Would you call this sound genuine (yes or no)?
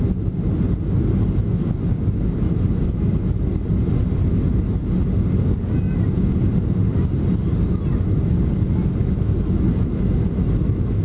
yes